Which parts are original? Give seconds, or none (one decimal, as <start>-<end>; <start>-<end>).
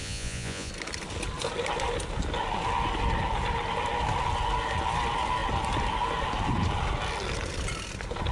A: 0.7-8.3